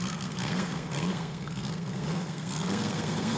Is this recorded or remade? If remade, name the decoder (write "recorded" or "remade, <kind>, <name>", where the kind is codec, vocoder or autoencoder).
remade, codec, SNAC